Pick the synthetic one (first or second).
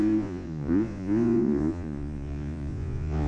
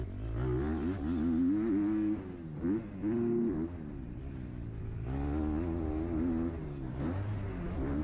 first